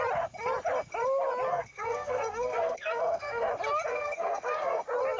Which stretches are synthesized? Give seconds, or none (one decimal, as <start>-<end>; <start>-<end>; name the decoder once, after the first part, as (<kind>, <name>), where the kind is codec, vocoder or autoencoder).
1.5-3.5 (codec, SNAC); 3.9-4.8